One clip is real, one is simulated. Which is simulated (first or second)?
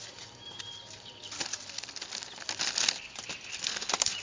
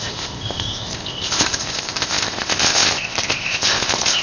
second